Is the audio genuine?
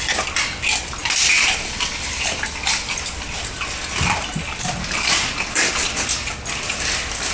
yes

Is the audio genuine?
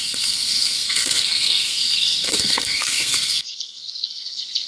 no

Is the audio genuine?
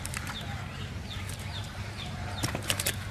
no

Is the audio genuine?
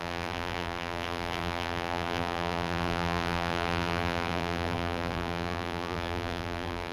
no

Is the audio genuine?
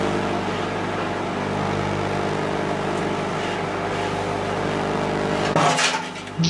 yes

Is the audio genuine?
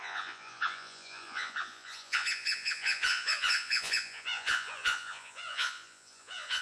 no